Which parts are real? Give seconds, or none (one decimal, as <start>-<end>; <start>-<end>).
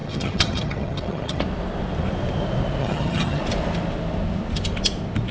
1.4-2.8; 3.4-5.3